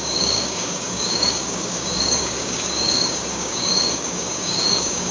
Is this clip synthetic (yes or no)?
yes